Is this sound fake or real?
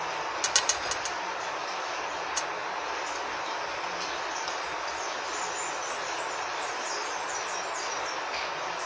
real